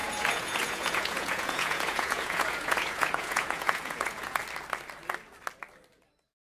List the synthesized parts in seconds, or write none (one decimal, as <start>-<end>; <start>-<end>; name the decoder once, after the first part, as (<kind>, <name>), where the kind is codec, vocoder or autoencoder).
0.0-4.4 (vocoder, Vocos)